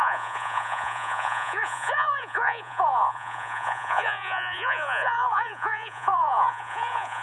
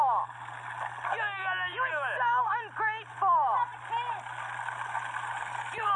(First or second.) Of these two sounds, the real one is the second